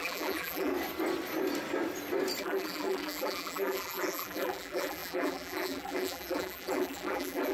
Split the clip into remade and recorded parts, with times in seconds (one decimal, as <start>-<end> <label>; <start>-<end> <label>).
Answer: 0.0-0.7 remade; 0.7-2.4 recorded; 2.4-7.5 remade